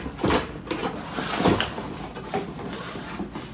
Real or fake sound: real